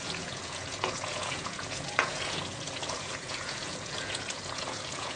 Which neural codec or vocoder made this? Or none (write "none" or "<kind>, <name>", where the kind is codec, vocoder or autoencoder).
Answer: vocoder, Vocos